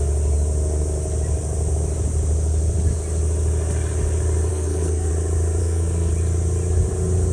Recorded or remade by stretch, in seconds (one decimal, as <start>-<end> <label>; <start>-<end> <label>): 0.0-4.5 recorded; 4.5-5.1 remade; 5.1-5.6 recorded; 5.6-6.1 remade; 6.1-7.3 recorded